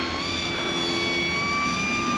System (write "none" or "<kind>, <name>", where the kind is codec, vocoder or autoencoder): none